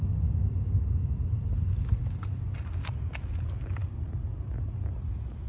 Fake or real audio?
real